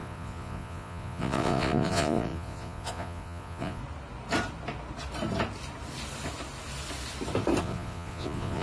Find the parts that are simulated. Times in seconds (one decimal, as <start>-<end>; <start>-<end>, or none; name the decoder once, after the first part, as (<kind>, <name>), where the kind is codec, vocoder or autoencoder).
0.0-3.8 (vocoder, Vocos); 7.6-8.6